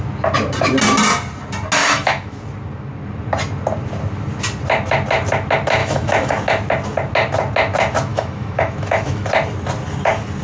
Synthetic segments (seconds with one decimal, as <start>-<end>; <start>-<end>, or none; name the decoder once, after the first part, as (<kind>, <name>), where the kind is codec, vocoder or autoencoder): 1.8-2.4 (autoencoder, DAC-VAE); 5.8-6.3; 8.1-9.3